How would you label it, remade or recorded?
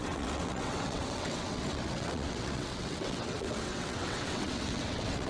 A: remade